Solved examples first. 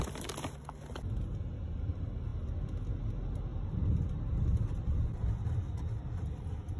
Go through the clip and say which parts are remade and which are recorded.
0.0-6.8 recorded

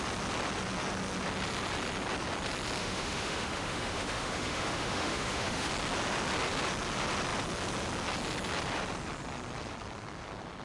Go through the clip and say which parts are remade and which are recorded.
0.0-2.8 recorded; 2.8-5.7 remade; 5.7-10.6 recorded

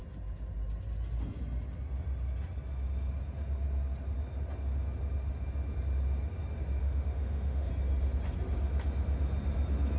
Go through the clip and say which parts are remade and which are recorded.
0.0-6.8 recorded; 6.8-7.7 remade; 7.7-10.0 recorded

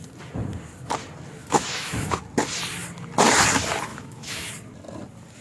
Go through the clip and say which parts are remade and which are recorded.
0.0-1.4 recorded; 1.4-2.2 remade; 2.2-3.9 recorded; 3.9-4.5 remade; 4.5-5.4 recorded

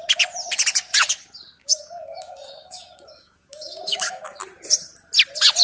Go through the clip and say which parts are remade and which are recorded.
0.0-1.6 recorded; 1.6-4.4 remade; 4.4-5.6 recorded

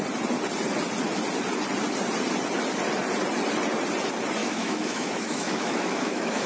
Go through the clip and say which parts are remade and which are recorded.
0.0-4.4 recorded; 4.4-6.5 remade

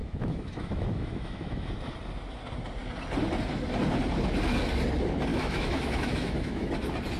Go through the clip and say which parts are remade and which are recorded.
0.0-1.7 remade; 1.7-5.3 recorded; 5.3-6.7 remade; 6.7-7.2 recorded